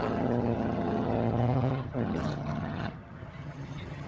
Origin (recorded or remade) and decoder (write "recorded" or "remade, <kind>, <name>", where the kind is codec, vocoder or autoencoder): remade, vocoder, HiFi-GAN